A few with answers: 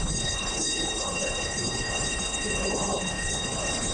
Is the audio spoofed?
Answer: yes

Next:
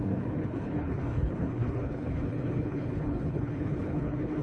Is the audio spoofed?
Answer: yes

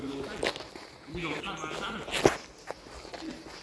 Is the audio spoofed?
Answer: no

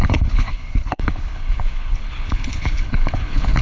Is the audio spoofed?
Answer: yes